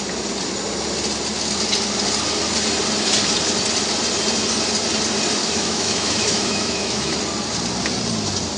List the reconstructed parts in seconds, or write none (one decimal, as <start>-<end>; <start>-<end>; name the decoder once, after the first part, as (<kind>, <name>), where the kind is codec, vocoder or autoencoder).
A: 5.4-7.2 (autoencoder, DAC-VAE)